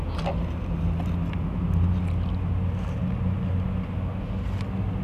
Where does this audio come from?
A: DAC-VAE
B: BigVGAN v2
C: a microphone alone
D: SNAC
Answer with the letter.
C